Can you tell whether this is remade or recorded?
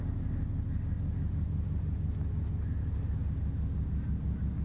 recorded